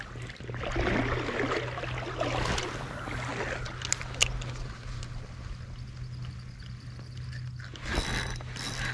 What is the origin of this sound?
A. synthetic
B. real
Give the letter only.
B